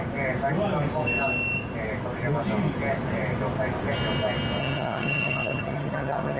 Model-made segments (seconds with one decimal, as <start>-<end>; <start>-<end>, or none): 4.6-6.4